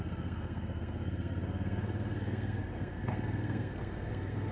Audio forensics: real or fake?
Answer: fake